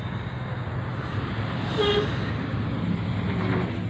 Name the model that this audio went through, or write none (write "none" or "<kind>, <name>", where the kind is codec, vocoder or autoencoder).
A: none